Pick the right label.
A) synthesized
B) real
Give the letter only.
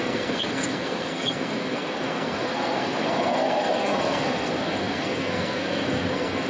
A